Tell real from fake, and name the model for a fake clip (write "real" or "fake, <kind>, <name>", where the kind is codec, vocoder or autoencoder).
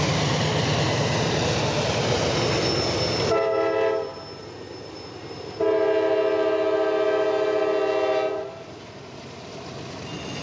real